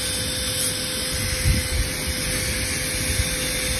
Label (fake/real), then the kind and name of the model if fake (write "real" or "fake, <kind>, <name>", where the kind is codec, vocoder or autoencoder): real